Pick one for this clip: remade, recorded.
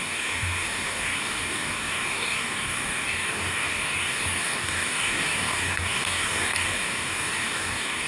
remade